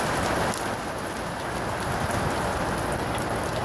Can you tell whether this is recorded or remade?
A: recorded